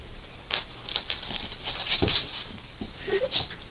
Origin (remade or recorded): remade